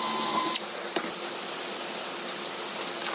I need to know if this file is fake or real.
real